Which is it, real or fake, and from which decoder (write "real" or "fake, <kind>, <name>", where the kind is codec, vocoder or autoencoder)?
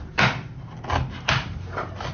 real